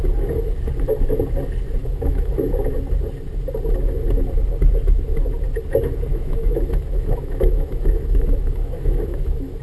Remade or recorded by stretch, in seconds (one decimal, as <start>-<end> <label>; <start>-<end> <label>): 0.0-1.8 recorded; 1.8-2.3 remade; 2.3-6.1 recorded; 6.1-9.6 remade